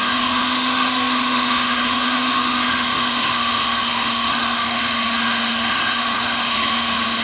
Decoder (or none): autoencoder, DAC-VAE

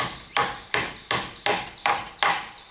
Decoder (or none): none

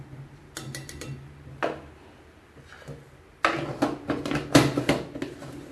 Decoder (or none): none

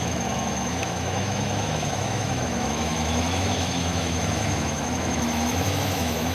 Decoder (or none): autoencoder, DAC-VAE